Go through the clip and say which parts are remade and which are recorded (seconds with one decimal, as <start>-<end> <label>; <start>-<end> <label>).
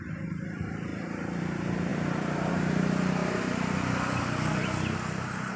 0.0-5.6 recorded